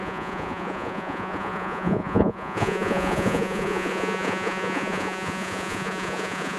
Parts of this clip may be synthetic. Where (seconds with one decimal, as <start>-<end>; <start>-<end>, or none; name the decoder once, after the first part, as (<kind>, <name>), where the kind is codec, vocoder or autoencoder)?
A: 0.0-6.6 (vocoder, Vocos)